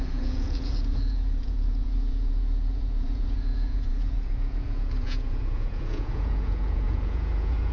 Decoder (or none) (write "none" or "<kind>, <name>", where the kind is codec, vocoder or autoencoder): vocoder, Vocos